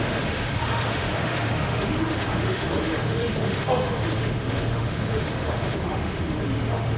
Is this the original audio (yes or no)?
no